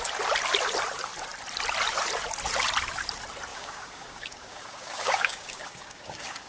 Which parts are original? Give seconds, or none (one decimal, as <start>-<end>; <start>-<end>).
0.0-3.5

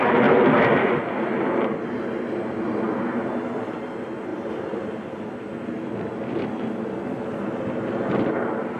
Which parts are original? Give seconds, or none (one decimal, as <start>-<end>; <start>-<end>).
0.0-8.8

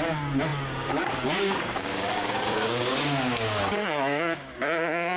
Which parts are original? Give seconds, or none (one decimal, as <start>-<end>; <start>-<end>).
none

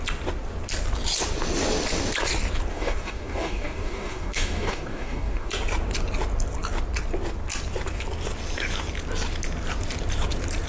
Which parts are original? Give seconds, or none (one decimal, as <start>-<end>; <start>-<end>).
0.0-2.7; 5.5-10.7

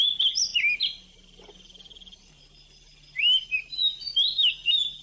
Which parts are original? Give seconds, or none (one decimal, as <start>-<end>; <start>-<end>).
0.0-5.0

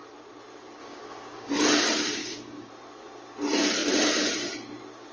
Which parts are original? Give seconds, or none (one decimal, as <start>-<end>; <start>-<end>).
0.0-0.8; 1.5-2.2; 2.7-5.1

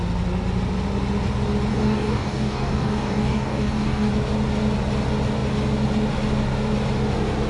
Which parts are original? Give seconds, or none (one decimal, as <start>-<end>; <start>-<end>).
0.0-1.7; 4.1-7.5

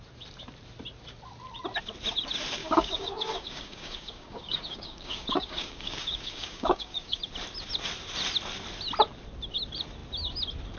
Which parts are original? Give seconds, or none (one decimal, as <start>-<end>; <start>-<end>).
0.0-2.6; 7.2-10.8